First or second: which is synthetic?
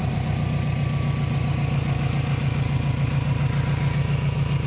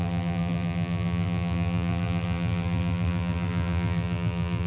second